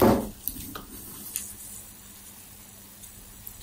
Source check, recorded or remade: recorded